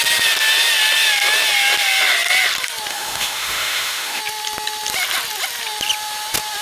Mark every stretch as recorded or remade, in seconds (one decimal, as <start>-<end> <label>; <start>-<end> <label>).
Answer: 0.0-2.9 recorded; 2.9-4.2 remade; 4.2-6.6 recorded